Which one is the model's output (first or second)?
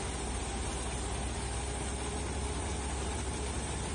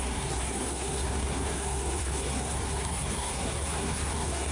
second